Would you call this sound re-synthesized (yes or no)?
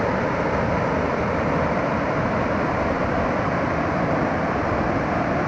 no